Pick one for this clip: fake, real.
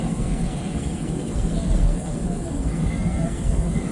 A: fake